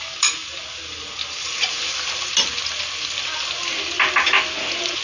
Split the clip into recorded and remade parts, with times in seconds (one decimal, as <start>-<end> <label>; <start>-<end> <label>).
0.0-5.0 recorded